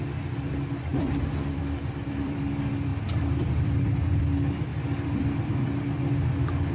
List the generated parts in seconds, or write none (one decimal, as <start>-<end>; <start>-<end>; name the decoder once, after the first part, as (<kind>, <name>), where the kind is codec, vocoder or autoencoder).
0.9-2.4 (vocoder, BigVGAN v2); 2.9-4.2